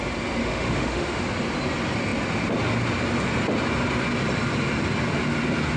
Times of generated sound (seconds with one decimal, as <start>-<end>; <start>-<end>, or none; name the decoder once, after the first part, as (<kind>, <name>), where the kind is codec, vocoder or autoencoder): 0.4-1.2 (autoencoder, DAC-VAE)